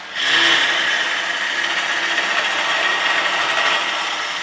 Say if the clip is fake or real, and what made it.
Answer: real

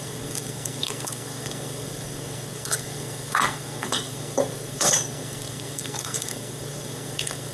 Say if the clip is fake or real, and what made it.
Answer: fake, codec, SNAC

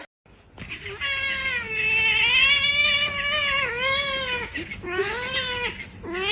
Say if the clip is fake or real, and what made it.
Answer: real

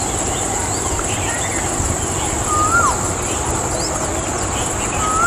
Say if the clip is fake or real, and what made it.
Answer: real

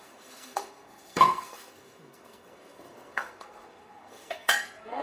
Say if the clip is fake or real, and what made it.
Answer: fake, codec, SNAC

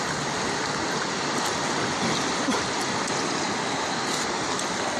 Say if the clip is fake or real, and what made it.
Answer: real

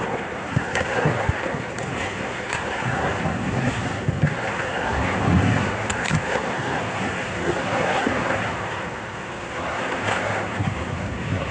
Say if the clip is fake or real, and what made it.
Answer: fake, codec, SNAC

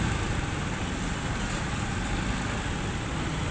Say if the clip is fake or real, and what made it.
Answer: real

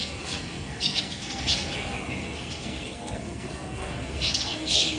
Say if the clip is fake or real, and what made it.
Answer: fake, codec, SNAC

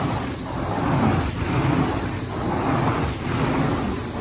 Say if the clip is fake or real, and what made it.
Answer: real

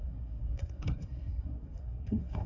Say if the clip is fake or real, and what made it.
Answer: fake, codec, SNAC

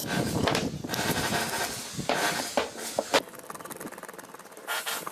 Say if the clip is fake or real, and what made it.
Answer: real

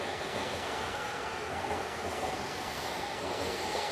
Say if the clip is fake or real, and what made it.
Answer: fake, codec, SNAC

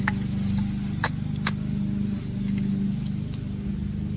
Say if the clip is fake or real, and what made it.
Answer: real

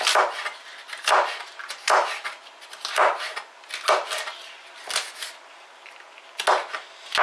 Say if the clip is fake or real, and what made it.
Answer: real